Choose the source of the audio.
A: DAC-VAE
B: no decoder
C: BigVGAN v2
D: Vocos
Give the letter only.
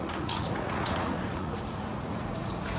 D